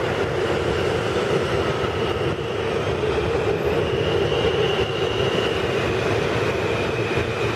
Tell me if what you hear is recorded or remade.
recorded